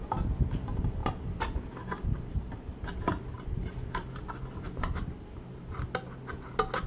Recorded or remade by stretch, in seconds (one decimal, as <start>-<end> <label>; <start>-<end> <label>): 0.0-6.9 recorded